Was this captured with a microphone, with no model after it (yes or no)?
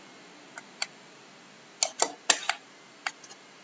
yes